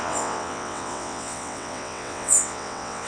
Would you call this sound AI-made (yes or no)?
yes